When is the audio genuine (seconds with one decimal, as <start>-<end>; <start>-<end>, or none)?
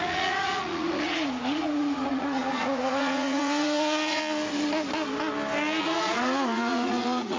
4.2-5.8